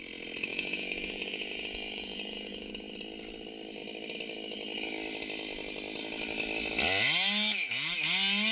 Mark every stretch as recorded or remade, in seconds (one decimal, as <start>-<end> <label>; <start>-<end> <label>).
0.0-0.5 recorded; 0.5-2.7 remade; 2.7-8.5 recorded